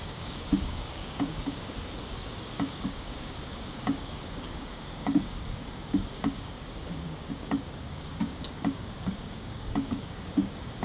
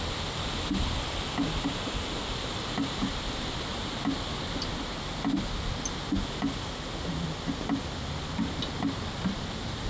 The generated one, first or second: first